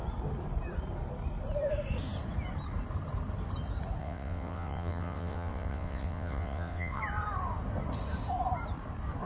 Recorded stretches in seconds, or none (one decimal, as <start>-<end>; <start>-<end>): 0.0-4.0; 7.0-9.3